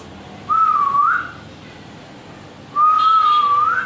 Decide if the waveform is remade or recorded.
recorded